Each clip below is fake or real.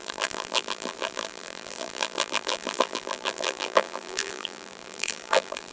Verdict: fake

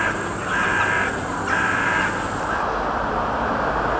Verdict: real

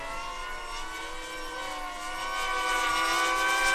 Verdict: real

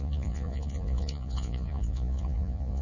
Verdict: fake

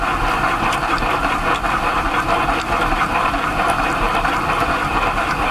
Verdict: fake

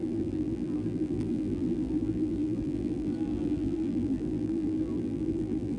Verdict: fake